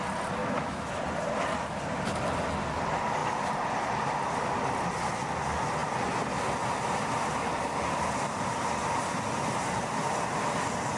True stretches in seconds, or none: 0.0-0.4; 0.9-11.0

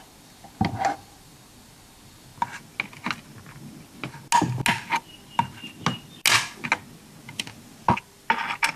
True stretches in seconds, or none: 0.0-8.8

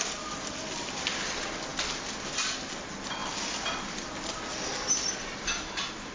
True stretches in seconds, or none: 0.0-6.1